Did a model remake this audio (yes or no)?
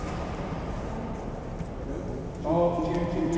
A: no